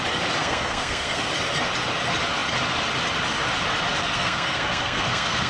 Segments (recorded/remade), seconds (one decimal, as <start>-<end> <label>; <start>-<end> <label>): 0.0-0.4 recorded; 0.4-1.3 remade; 1.3-4.0 recorded; 4.0-5.5 remade